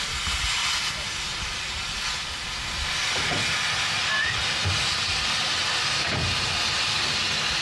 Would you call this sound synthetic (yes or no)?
no